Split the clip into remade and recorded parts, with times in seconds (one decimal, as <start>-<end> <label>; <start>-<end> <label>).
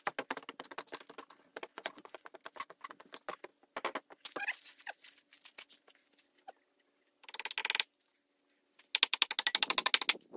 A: 0.0-1.7 recorded; 1.7-2.3 remade; 2.3-10.4 recorded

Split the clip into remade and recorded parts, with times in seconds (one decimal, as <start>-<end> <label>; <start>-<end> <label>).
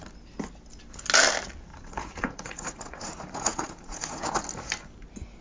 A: 0.0-1.7 recorded; 1.7-4.4 remade; 4.4-5.4 recorded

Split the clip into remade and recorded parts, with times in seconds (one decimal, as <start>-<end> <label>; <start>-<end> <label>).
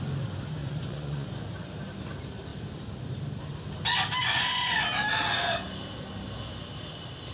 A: 0.0-0.6 recorded; 0.6-1.4 remade; 1.4-4.2 recorded; 4.2-4.8 remade; 4.8-7.3 recorded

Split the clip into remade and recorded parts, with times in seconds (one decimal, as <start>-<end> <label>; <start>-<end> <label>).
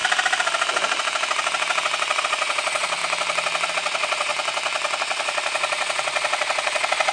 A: 0.0-2.2 recorded; 2.2-3.0 remade; 3.0-3.7 recorded; 3.7-4.3 remade; 4.3-5.0 recorded; 5.0-7.1 remade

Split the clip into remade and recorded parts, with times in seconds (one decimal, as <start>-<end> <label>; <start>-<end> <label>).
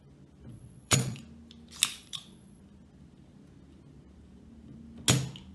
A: 0.0-0.5 recorded; 0.5-1.2 remade; 1.2-1.9 recorded; 1.9-2.6 remade; 2.6-5.5 recorded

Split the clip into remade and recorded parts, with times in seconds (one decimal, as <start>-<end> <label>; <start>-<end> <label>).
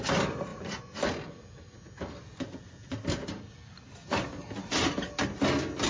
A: 0.0-5.9 recorded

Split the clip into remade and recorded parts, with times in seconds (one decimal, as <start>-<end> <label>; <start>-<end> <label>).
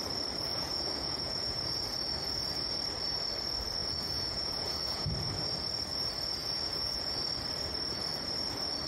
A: 0.0-0.5 recorded; 0.5-1.8 remade; 1.8-3.8 recorded; 3.8-5.1 remade; 5.1-6.4 recorded; 6.4-7.2 remade; 7.2-8.9 recorded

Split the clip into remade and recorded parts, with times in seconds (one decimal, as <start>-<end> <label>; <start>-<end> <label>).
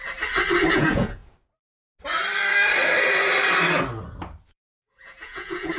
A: 0.0-0.6 recorded; 0.6-1.2 remade; 1.2-4.5 recorded; 4.5-5.8 remade